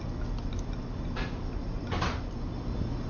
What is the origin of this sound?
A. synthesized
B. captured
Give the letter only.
B